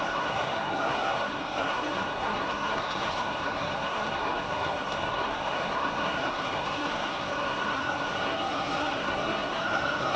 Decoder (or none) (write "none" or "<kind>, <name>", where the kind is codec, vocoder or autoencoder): codec, SNAC